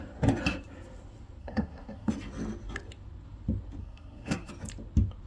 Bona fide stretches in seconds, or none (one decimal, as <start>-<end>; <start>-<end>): 0.0-1.4; 2.1-3.8; 4.5-5.3